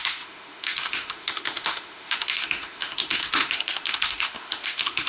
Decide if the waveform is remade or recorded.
remade